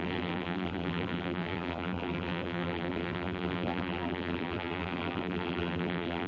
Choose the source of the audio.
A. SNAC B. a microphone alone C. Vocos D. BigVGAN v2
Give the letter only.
D